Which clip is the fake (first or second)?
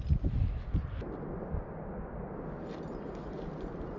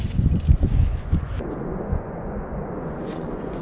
second